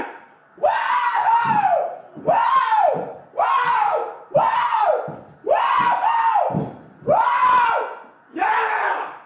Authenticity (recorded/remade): recorded